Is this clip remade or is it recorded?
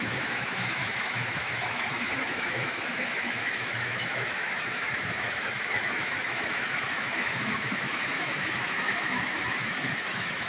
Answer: remade